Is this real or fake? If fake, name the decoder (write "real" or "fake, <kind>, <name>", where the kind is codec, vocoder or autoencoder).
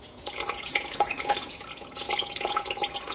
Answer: fake, vocoder, Vocos